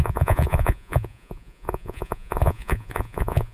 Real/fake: fake